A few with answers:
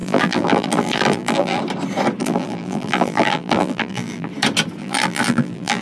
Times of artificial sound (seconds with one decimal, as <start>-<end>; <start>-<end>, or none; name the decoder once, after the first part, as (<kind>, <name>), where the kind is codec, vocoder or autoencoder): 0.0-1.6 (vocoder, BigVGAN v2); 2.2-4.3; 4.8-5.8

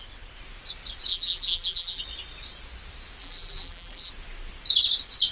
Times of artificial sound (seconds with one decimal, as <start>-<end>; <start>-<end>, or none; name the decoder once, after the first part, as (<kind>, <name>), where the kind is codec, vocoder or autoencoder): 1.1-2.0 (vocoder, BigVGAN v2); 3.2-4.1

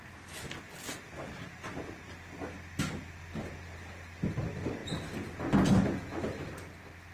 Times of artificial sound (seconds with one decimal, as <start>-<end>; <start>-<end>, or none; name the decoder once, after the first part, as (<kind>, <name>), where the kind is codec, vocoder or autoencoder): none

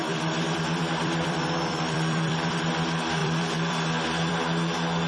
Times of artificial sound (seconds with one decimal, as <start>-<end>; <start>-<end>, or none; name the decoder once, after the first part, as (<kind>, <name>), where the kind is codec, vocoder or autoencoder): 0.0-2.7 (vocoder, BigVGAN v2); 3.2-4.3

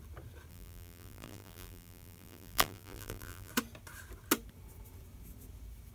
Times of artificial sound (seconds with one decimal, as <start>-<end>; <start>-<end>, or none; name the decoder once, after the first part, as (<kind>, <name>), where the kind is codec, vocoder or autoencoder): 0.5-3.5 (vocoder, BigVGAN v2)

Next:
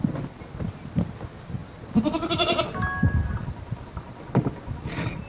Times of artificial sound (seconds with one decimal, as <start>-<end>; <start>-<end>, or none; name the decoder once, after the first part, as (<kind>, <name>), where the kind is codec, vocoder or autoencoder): none

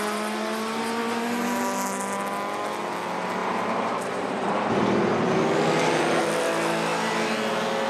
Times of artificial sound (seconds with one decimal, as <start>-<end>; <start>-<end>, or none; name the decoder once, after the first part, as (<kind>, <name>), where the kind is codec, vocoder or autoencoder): 3.4-4.7 (vocoder, BigVGAN v2)

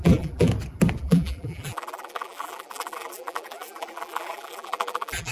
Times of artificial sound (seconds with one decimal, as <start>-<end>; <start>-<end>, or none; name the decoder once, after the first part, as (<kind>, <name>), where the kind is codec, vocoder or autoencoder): 0.0-0.5 (vocoder, BigVGAN v2); 1.0-5.3